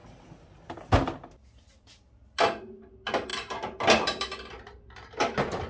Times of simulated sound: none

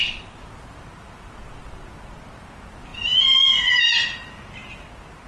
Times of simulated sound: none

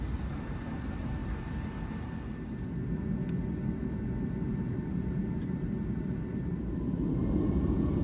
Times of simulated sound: 0.0-1.2 (vocoder, BigVGAN v2); 4.6-8.0

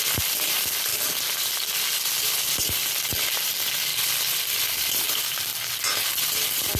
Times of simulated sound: 0.0-0.9 (vocoder, BigVGAN v2); 1.4-3.9; 4.9-5.5

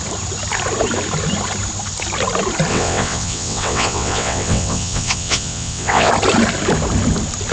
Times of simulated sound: 2.7-6.1 (vocoder, WaveNeXt)

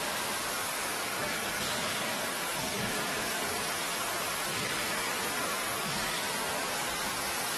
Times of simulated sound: 0.6-3.8 (codec, DAC); 4.5-7.6

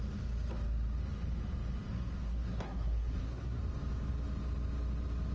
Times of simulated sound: 1.9-3.6 (codec, SNAC)